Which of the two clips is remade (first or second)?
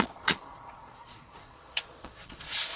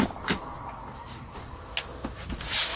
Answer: first